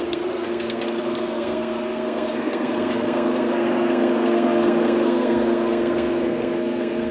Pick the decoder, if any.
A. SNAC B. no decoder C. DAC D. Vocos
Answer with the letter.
A